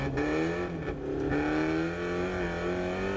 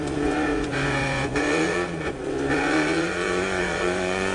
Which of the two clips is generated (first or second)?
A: second